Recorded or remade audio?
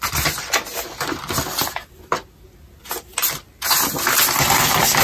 recorded